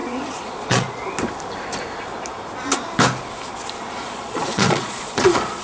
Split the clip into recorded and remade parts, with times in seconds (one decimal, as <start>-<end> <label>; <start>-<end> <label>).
0.0-1.0 remade; 1.0-3.8 recorded; 3.8-5.6 remade